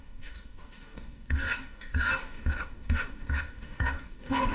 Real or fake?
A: fake